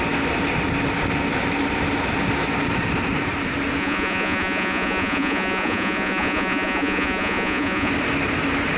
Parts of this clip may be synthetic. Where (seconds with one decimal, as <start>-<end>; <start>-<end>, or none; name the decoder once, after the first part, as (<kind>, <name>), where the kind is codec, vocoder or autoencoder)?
3.8-7.9 (vocoder, Vocos)